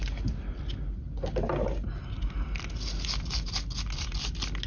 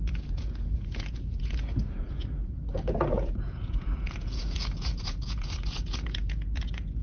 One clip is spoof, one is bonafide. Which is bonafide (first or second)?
first